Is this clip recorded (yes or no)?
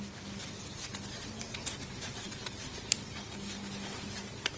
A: yes